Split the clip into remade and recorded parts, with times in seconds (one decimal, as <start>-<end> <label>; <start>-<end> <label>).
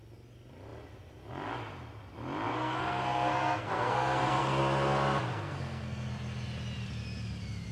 0.0-2.5 recorded; 2.5-4.6 remade; 4.6-5.3 recorded; 5.3-6.1 remade; 6.1-7.7 recorded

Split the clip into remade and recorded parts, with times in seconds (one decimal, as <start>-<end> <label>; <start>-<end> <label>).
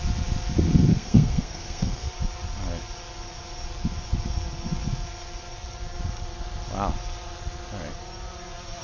0.0-0.9 recorded; 0.9-2.1 remade; 2.1-8.8 recorded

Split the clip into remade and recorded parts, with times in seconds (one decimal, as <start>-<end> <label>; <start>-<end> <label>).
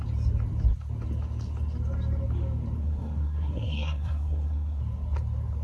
0.0-2.8 recorded; 2.8-4.8 remade; 4.8-5.6 recorded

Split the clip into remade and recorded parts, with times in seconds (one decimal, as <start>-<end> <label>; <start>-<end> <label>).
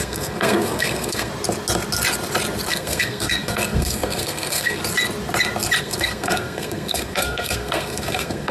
0.0-1.3 remade; 1.3-2.7 recorded; 2.7-4.8 remade; 4.8-5.8 recorded; 5.8-8.5 remade